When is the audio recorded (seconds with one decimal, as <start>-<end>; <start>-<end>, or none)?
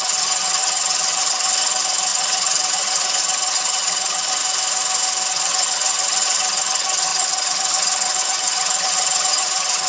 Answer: 4.4-5.3